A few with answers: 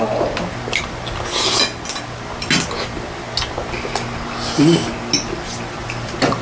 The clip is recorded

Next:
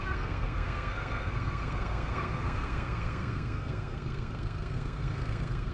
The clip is remade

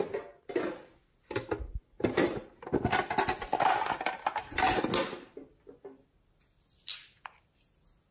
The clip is recorded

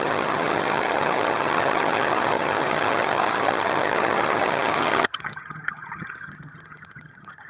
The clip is remade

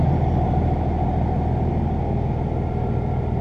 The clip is recorded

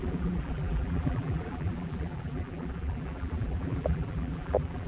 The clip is remade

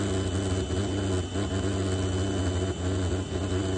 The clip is recorded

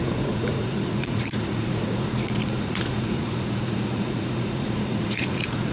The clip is remade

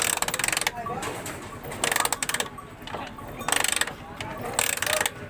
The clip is recorded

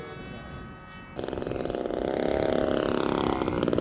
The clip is recorded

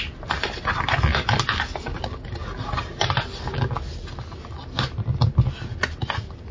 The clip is recorded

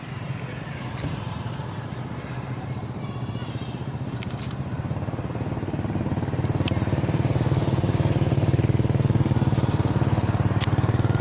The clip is remade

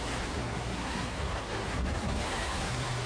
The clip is remade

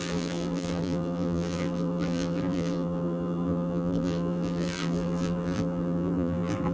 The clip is remade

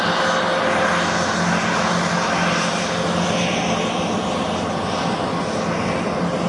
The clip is recorded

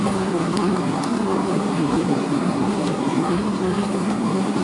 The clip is remade